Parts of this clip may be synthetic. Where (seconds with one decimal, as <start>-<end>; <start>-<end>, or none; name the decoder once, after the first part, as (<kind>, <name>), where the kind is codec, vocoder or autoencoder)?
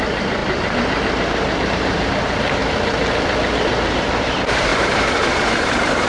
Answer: 0.0-0.4 (vocoder, BigVGAN v2); 1.7-2.6; 3.9-6.1